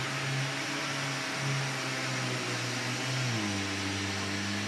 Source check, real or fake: real